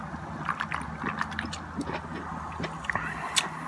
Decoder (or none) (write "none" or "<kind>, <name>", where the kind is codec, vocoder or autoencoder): none